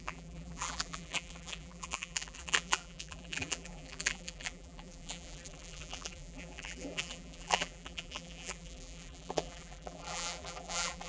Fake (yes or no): yes